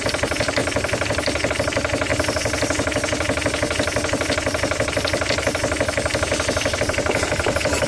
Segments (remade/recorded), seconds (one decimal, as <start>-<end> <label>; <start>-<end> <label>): 0.0-7.9 recorded